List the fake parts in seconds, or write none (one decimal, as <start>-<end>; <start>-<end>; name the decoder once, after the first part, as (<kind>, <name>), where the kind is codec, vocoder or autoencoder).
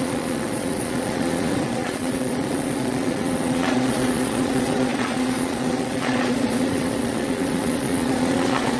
0.0-8.8 (vocoder, Vocos)